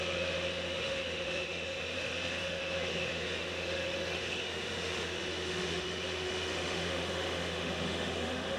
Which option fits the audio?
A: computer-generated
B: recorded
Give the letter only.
A